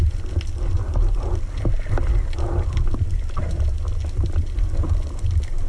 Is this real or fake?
real